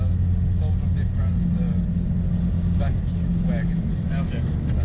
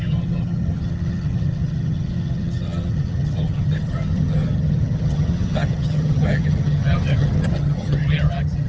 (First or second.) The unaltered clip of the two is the first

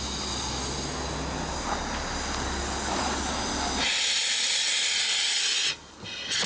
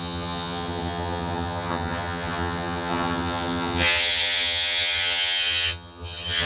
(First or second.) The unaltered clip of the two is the first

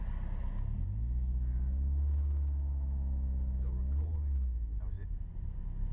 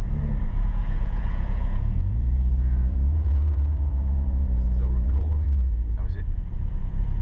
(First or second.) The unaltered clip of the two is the first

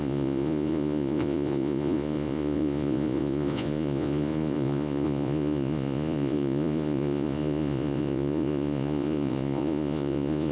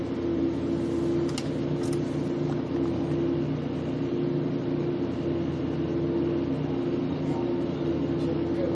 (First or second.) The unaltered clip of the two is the second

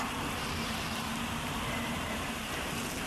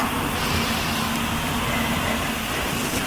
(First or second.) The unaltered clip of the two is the second